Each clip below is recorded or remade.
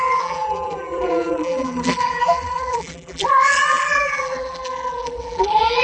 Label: remade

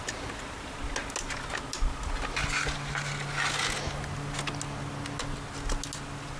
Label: recorded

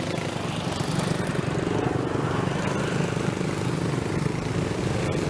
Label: recorded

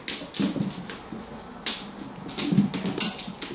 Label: recorded